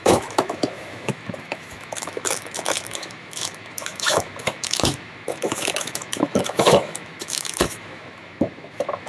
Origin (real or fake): fake